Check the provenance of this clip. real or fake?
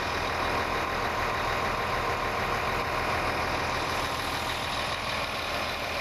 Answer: real